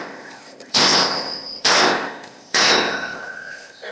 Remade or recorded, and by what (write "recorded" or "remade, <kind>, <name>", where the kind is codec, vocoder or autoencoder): remade, codec, ZipCodec